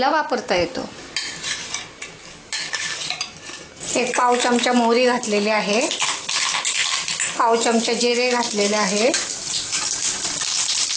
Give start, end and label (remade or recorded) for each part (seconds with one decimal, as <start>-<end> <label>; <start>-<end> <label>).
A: 0.0-2.2 recorded; 2.2-3.0 remade; 3.0-8.1 recorded; 8.1-9.3 remade; 9.3-11.0 recorded